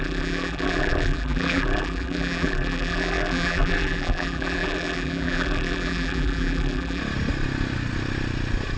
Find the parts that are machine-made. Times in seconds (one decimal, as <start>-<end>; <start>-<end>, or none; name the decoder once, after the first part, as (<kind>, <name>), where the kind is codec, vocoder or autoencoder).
0.0-7.0 (vocoder, BigVGAN v2)